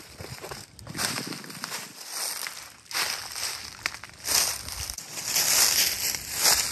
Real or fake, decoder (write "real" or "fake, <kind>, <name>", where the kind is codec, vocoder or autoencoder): real